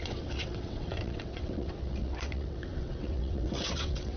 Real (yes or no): no